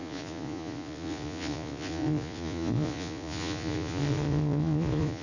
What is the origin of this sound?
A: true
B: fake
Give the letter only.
B